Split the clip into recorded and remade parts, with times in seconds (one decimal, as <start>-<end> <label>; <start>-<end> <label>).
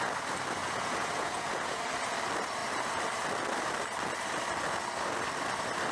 0.0-0.6 recorded; 0.6-1.8 remade; 1.8-5.9 recorded